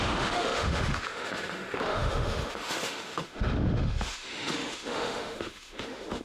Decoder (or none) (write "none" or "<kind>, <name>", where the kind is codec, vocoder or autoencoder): autoencoder, DAC-VAE